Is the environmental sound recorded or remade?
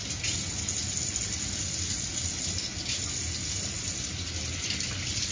recorded